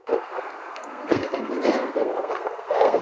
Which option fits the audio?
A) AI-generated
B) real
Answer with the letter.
A